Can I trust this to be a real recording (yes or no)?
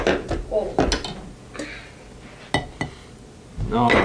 yes